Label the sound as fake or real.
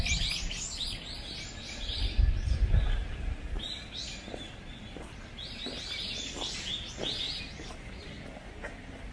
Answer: real